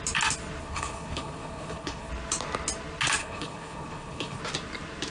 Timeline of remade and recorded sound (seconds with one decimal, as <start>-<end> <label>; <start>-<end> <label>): 0.0-0.6 recorded; 0.6-2.1 remade; 2.1-3.2 recorded; 3.2-4.4 remade; 4.4-5.1 recorded